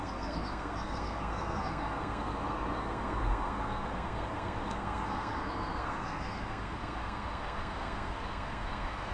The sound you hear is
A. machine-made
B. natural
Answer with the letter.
A